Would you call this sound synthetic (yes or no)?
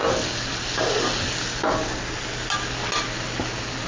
no